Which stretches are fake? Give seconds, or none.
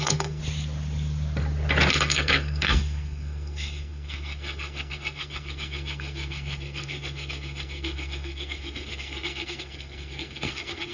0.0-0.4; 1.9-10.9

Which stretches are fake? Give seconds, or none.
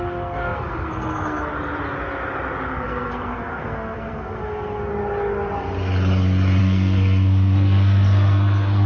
0.0-1.5; 2.7-4.9; 6.6-8.9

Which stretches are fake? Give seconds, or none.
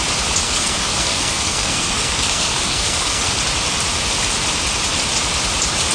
0.4-3.3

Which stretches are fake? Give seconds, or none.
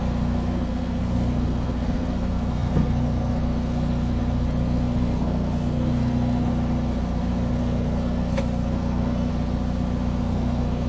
0.0-6.5; 7.5-9.3; 10.2-10.9